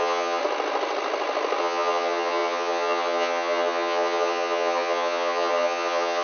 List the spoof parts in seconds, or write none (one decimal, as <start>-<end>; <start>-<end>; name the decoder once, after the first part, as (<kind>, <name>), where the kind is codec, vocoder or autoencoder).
0.0-0.4 (vocoder, HiFi-GAN); 1.6-6.2

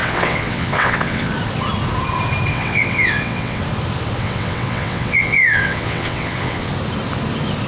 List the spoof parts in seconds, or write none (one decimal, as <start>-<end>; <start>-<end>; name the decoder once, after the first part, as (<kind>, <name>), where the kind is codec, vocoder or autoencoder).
0.0-1.3 (vocoder, WaveNeXt); 2.5-3.6; 4.2-6.7

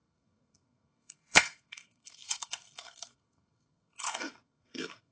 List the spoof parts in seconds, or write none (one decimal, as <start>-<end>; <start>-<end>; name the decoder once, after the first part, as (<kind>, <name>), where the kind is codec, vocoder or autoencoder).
0.0-5.1 (codec, SNAC)

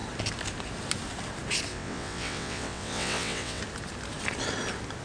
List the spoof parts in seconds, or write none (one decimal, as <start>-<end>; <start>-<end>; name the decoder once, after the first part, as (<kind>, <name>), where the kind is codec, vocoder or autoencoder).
1.7-3.6 (vocoder, WaveNeXt)